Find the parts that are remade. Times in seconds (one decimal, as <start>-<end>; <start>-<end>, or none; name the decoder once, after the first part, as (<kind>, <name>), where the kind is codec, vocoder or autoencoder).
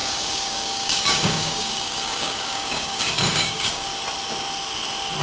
0.0-3.9 (codec, DAC)